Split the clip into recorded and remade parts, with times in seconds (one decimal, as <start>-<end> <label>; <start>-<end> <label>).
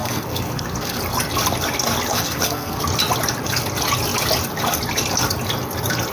0.0-1.0 remade; 1.0-2.1 recorded; 2.1-2.8 remade; 2.8-6.1 recorded